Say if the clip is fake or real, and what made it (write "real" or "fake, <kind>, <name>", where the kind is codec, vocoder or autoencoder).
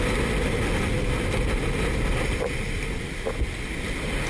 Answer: real